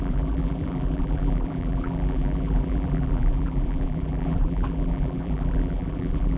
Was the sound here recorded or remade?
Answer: remade